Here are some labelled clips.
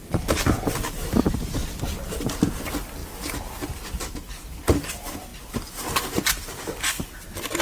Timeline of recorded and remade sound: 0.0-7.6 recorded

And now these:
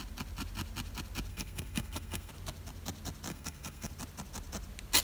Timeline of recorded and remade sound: 0.0-1.3 recorded; 1.3-2.3 remade; 2.3-3.3 recorded; 3.3-3.9 remade; 3.9-5.0 recorded

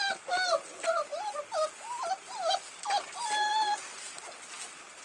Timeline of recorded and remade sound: 0.0-5.0 recorded

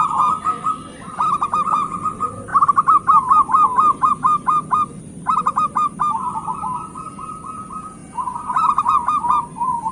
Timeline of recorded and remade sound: 0.0-9.9 recorded

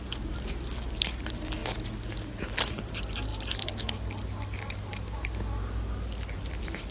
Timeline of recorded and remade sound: 0.0-6.9 recorded

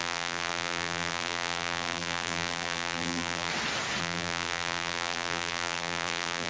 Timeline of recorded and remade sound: 0.0-3.5 remade; 3.5-4.0 recorded; 4.0-6.5 remade

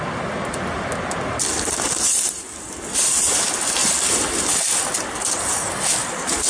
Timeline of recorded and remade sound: 0.0-6.5 recorded

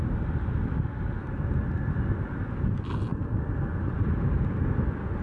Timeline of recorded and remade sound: 0.0-5.2 recorded